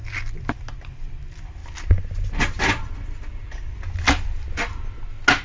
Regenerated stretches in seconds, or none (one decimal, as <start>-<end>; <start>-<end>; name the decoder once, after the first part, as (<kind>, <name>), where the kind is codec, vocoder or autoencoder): none